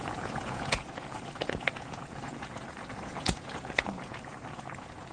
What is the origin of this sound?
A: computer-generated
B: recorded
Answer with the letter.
A